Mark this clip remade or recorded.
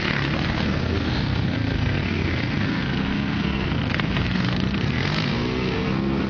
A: remade